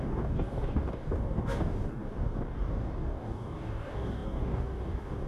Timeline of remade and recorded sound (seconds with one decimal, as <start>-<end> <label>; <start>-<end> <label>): 0.0-5.3 remade